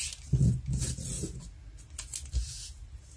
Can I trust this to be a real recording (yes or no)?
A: yes